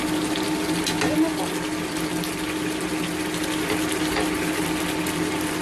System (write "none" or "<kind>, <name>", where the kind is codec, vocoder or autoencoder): none